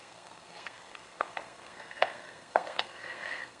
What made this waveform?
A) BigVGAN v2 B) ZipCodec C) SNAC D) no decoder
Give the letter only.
C